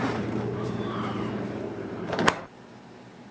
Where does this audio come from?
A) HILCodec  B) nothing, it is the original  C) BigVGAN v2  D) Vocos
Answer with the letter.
C